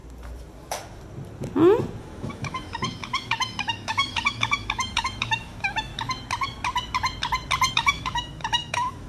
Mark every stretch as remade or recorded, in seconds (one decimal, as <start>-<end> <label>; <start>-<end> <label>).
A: 0.0-2.0 recorded; 2.0-5.9 remade; 5.9-7.7 recorded; 7.7-9.1 remade